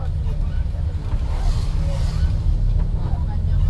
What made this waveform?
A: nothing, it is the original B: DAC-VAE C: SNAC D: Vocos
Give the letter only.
A